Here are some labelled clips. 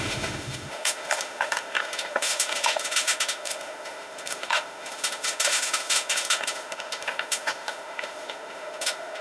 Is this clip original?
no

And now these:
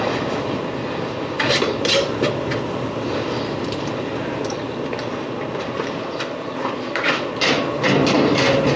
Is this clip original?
yes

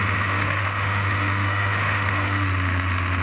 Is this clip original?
no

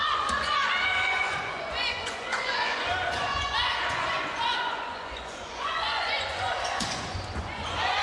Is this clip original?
no